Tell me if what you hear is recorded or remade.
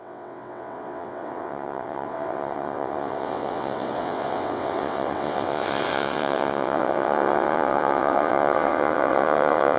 remade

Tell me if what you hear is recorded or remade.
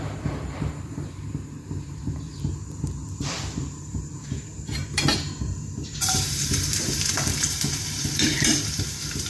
remade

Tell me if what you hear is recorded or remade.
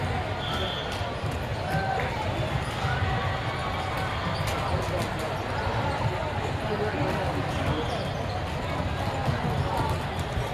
recorded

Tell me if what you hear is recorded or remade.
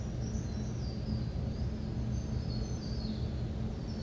recorded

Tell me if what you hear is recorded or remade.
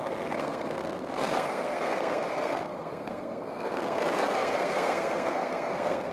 remade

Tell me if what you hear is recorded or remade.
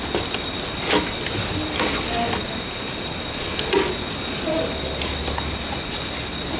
recorded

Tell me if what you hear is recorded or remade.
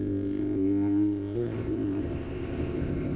remade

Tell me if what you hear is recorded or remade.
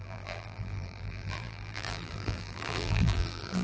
remade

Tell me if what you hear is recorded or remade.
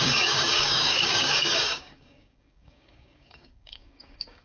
remade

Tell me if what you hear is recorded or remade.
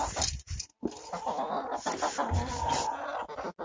recorded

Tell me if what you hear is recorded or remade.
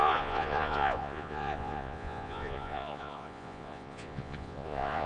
remade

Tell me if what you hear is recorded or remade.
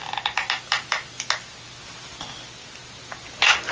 recorded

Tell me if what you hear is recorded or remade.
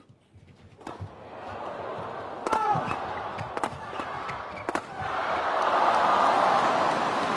recorded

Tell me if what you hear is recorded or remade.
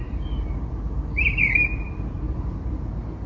remade